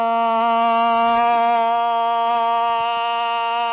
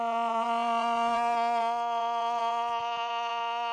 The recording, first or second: first